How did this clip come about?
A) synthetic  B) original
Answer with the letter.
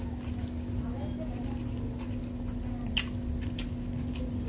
B